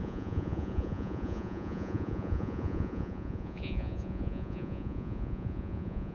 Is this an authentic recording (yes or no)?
no